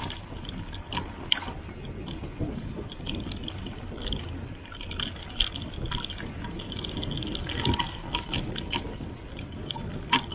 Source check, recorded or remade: recorded